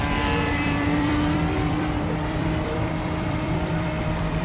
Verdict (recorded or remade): remade